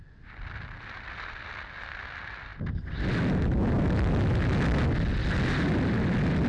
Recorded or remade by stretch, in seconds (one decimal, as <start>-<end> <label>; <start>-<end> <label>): 0.0-6.5 recorded